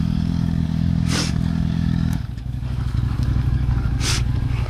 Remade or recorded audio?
remade